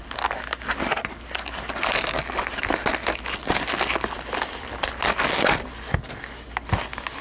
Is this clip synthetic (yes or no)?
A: no